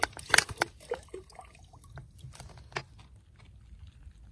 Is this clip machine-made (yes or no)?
no